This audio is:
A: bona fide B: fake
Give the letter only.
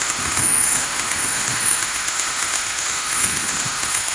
B